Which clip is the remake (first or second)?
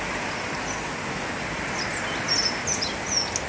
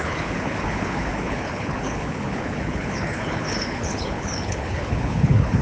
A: second